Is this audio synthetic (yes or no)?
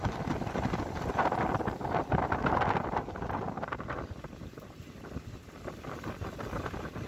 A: no